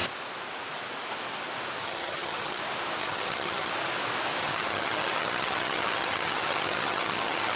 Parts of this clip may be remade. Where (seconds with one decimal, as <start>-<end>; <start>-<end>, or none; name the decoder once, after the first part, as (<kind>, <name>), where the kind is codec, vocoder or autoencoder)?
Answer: 1.8-2.6 (vocoder, HiFi-GAN); 3.0-3.7; 4.4-7.6